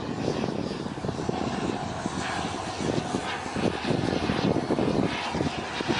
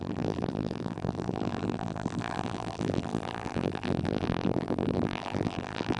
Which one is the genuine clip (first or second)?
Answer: first